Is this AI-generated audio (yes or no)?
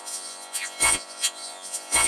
yes